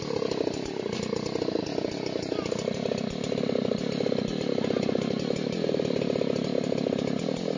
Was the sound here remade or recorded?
recorded